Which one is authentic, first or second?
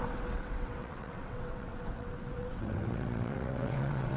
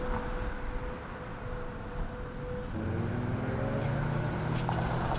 second